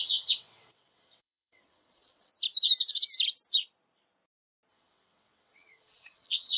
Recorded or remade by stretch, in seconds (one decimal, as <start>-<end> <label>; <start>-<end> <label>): 0.0-2.3 remade; 2.3-4.7 recorded; 4.7-6.6 remade